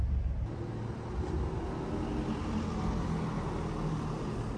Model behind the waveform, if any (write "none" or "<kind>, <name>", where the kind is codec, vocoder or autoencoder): none